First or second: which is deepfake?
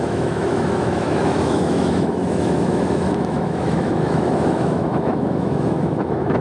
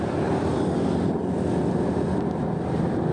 first